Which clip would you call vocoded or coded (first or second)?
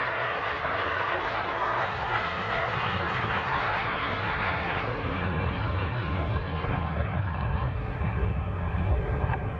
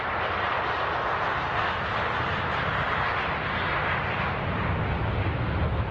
first